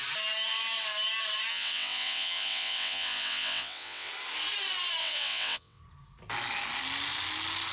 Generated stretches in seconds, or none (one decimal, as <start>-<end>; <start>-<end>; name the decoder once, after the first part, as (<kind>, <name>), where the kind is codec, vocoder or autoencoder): 1.5-4.1 (vocoder, WaveNeXt); 5.0-5.8